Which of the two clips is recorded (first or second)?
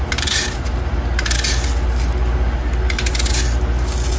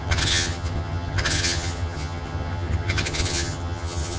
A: first